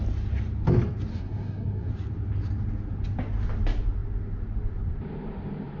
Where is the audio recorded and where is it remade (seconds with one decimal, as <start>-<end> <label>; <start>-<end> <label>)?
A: 0.0-1.1 recorded; 1.1-1.9 remade; 1.9-5.8 recorded